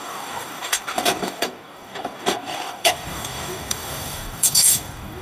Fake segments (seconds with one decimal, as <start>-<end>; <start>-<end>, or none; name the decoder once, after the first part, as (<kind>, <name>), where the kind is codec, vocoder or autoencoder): 0.0-5.2 (codec, DAC)